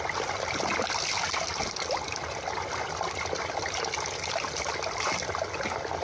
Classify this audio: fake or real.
real